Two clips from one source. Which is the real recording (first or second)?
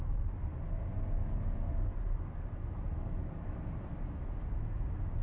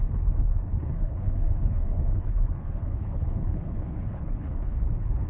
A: first